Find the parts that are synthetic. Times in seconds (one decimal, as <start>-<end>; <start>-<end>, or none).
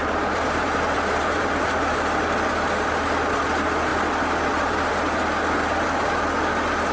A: 0.0-1.8